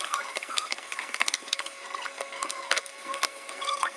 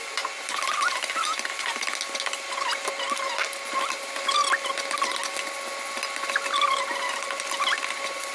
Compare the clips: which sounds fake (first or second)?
first